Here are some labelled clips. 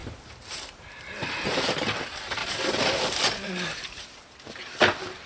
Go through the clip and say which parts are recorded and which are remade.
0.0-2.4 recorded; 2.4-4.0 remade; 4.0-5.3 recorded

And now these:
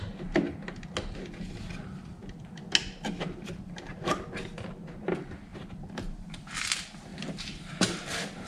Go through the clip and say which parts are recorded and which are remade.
0.0-7.1 recorded; 7.1-7.7 remade; 7.7-8.5 recorded

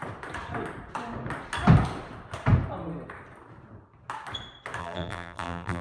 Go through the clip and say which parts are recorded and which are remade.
0.0-4.8 recorded; 4.8-5.8 remade

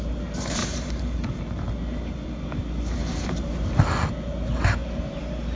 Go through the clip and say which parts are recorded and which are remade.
0.0-0.6 recorded; 0.6-1.7 remade; 1.7-3.0 recorded; 3.0-3.8 remade; 3.8-5.6 recorded

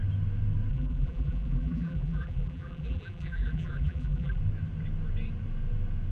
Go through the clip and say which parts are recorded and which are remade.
0.0-0.7 recorded; 0.7-4.4 remade; 4.4-6.1 recorded

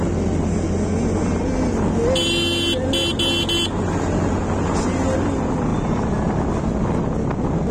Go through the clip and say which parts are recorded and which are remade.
0.0-7.7 recorded

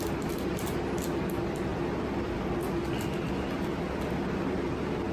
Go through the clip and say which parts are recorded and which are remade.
0.0-5.1 recorded